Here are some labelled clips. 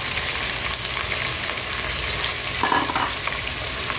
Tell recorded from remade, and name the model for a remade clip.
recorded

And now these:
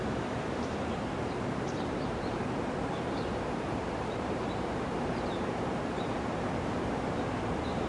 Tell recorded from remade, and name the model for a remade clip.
remade, vocoder, BigVGAN v2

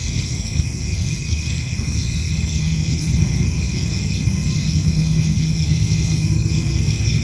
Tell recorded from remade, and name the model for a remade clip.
remade, codec, SNAC